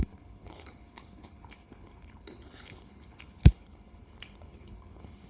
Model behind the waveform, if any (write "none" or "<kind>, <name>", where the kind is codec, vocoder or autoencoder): codec, HILCodec